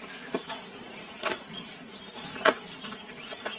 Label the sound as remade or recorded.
remade